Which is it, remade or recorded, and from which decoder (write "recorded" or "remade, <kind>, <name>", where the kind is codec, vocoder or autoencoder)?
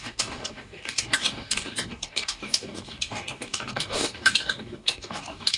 remade, codec, DAC